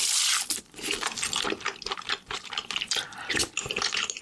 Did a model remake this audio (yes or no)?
yes